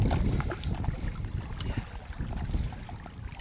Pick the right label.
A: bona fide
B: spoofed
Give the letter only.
A